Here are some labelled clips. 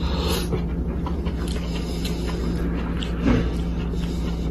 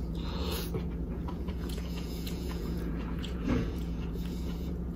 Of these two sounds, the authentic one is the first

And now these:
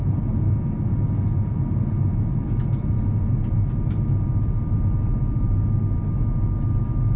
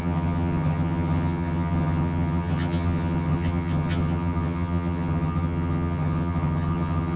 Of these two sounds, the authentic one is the first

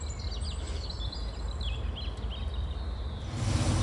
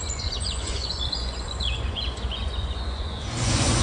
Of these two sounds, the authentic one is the first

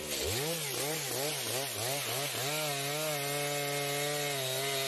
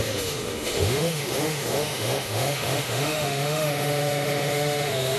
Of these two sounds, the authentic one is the first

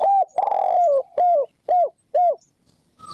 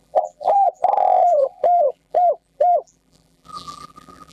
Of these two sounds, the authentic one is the first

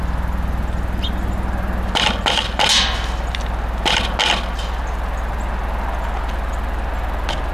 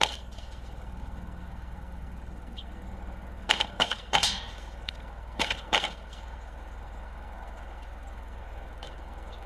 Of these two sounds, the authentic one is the first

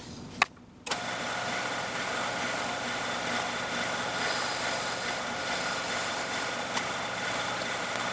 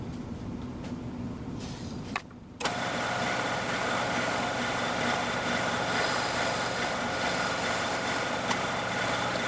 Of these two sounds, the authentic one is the first